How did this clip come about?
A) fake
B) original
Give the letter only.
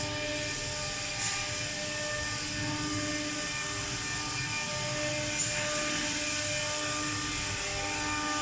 B